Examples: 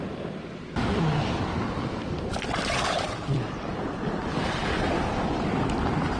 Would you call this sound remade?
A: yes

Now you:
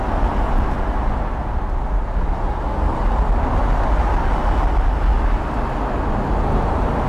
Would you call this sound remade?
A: no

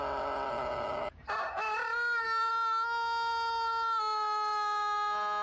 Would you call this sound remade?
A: no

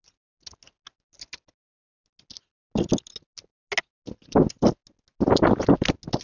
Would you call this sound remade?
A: no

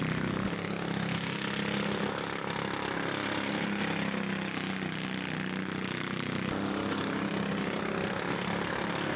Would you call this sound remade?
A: no